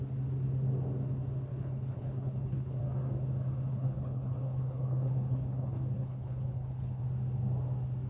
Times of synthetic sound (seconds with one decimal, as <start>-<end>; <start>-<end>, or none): 1.5-2.8; 3.7-7.0